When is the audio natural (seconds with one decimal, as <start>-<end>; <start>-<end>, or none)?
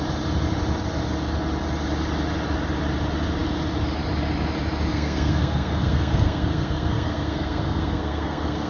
0.0-4.9